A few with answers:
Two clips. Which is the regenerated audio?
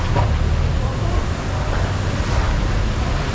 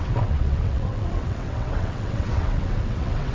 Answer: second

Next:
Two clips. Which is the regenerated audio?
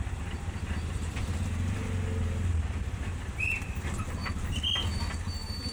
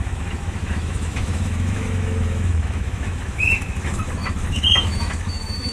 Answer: second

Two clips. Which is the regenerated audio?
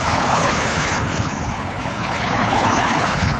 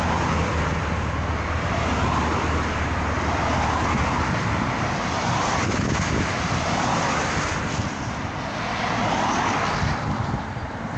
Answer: first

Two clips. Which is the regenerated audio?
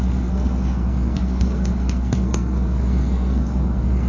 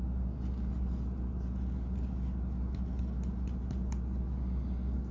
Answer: first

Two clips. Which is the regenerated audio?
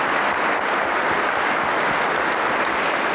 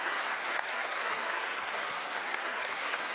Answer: second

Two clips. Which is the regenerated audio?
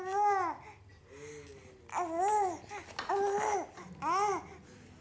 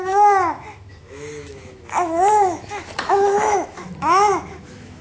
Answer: second